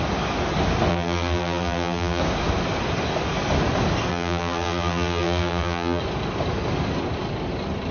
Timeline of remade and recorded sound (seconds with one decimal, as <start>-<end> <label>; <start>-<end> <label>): 0.0-0.9 recorded; 0.9-2.2 remade; 2.2-4.1 recorded; 4.1-6.0 remade; 6.0-7.9 recorded